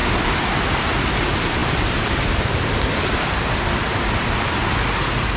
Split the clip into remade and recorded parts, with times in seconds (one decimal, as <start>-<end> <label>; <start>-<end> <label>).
0.0-1.1 remade; 1.1-1.6 recorded; 1.6-3.5 remade; 3.5-5.4 recorded